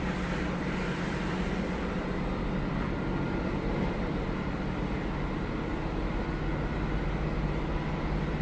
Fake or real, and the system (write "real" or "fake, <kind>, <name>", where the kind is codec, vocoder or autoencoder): real